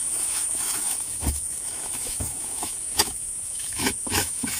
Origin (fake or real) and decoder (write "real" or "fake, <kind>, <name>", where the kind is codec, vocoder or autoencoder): fake, autoencoder, DAC-VAE